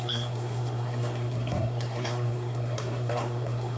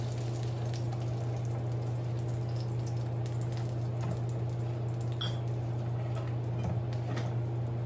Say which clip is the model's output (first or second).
first